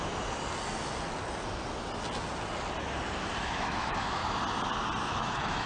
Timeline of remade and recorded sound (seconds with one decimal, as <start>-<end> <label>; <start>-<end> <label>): 0.0-3.4 recorded; 3.4-4.2 remade; 4.2-5.1 recorded; 5.1-5.7 remade